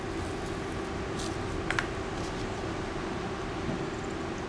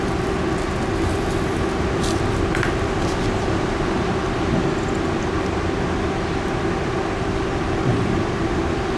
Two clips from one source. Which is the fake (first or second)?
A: second